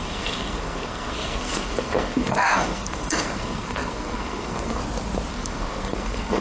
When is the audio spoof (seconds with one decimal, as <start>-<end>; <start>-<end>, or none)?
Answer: 0.0-4.8; 5.3-6.4